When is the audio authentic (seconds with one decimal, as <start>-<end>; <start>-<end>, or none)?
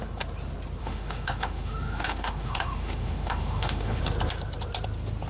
0.0-0.8; 4.0-5.3